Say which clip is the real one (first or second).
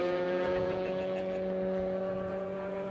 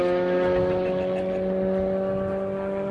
second